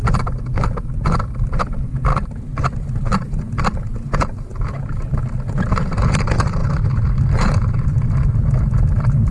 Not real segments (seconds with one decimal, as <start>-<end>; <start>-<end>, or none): 2.1-2.8; 6.6-8.4